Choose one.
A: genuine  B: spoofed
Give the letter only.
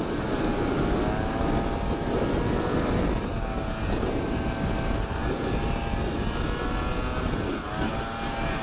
A